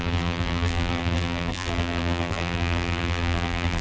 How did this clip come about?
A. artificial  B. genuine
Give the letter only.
A